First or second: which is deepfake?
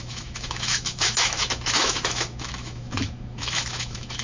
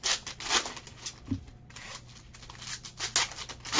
first